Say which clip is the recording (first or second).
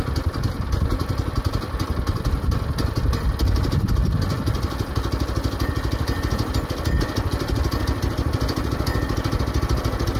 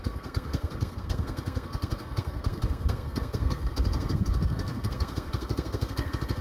first